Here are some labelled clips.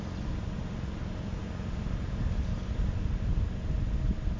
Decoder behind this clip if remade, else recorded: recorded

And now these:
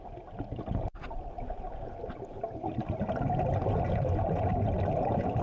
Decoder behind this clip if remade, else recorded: recorded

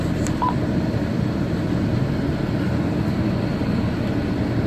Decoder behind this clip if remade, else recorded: recorded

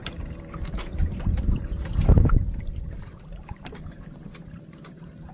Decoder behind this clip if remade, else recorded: remade, vocoder, BigVGAN v2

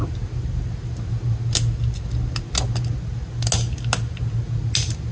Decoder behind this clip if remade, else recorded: recorded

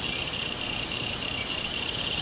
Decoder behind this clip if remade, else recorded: remade, vocoder, BigVGAN v2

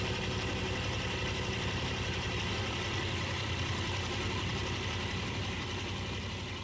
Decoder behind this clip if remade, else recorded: remade, vocoder, BigVGAN v2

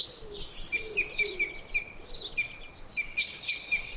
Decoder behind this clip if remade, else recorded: recorded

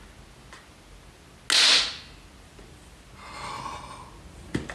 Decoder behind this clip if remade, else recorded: recorded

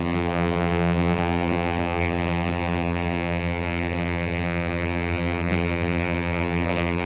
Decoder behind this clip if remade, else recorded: remade, vocoder, BigVGAN v2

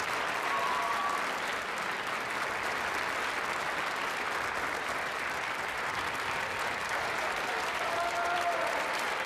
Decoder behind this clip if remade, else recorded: remade, vocoder, BigVGAN v2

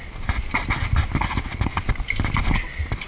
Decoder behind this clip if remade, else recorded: recorded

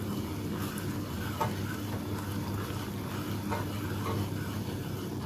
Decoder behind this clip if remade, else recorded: recorded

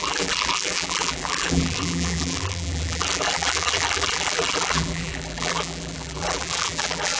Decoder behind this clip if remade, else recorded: remade, vocoder, BigVGAN v2